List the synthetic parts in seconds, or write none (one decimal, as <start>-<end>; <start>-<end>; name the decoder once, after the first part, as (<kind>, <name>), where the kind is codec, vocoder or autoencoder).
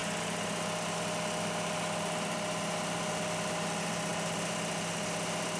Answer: none